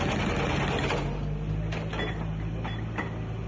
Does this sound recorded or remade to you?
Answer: recorded